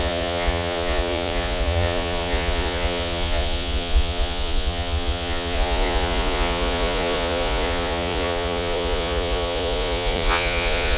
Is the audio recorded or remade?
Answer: remade